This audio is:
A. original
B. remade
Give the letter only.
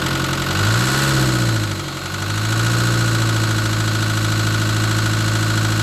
A